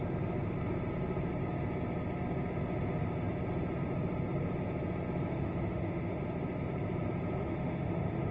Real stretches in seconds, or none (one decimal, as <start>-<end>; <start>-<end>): 0.0-5.3; 6.2-7.4